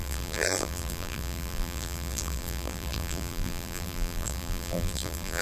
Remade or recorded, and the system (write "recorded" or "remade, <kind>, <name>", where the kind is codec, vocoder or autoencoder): remade, vocoder, BigVGAN v2